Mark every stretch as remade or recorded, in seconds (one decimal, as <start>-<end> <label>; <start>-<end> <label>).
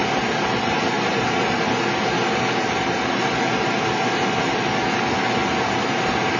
0.0-6.4 recorded